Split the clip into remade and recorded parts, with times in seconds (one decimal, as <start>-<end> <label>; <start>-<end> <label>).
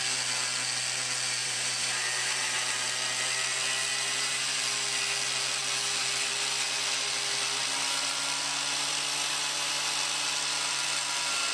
0.0-1.4 recorded; 1.4-2.9 remade; 2.9-3.9 recorded; 3.9-4.4 remade; 4.4-11.5 recorded